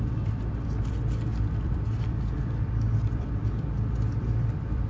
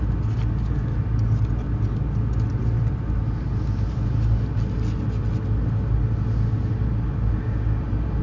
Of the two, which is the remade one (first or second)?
first